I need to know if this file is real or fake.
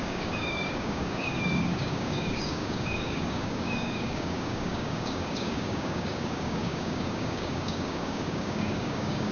fake